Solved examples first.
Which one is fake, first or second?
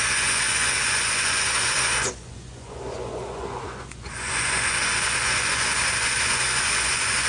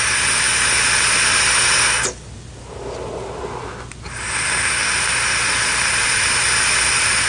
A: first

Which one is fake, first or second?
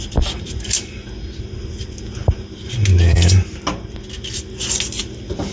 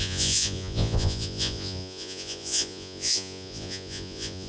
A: second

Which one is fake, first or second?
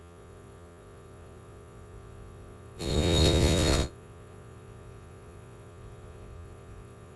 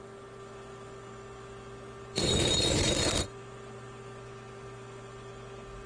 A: first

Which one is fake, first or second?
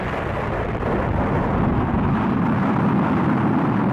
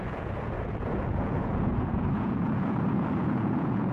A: second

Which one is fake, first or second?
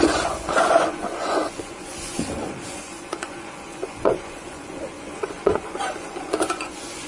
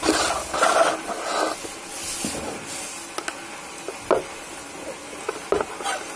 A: first